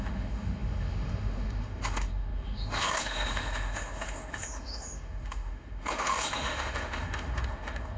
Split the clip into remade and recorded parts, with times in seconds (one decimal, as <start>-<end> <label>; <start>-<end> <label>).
0.0-8.0 remade